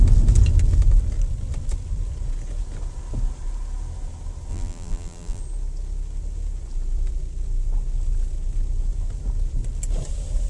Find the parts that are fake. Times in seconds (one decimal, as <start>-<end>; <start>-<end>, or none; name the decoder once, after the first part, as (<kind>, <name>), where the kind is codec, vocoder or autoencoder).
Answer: 4.5-5.4 (vocoder, BigVGAN v2)